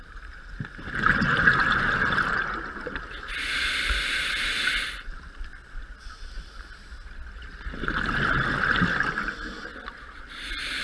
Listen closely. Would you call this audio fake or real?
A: real